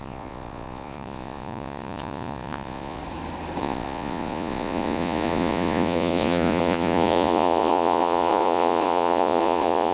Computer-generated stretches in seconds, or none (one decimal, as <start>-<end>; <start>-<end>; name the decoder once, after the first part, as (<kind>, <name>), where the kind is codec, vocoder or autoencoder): 0.0-3.0 (vocoder, Vocos); 3.6-9.9